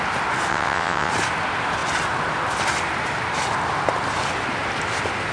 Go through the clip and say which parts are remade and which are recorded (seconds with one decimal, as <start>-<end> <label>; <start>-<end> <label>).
0.0-0.5 recorded; 0.5-1.1 remade; 1.1-5.3 recorded